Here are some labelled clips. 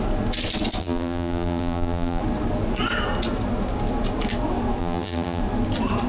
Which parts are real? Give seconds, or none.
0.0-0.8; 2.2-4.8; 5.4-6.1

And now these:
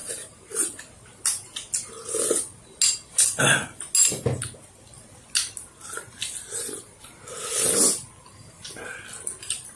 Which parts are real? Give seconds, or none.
0.8-9.8

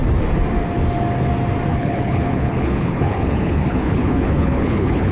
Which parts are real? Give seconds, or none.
0.0-1.7

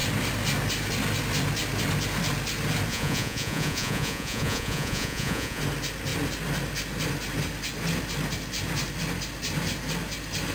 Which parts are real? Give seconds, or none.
0.0-2.9; 5.6-10.5